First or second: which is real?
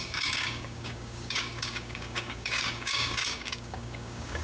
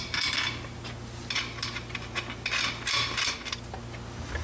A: second